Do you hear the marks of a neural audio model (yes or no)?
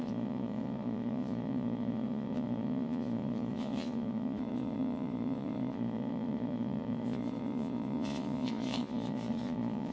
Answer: yes